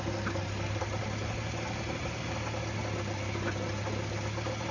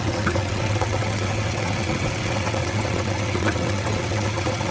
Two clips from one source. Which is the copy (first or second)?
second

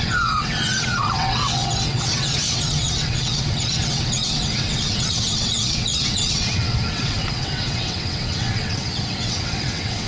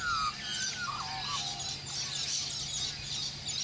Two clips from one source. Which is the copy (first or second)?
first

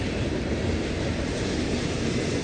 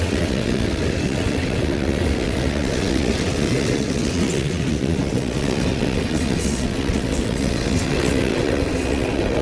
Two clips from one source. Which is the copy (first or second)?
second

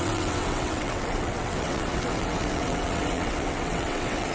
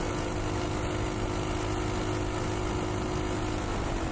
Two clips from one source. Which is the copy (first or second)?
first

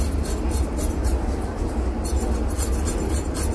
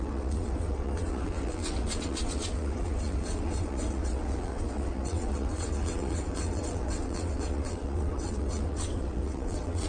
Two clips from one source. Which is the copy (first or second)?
second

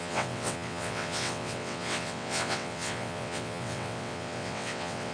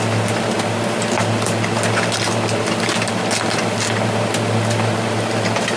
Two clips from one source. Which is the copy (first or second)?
first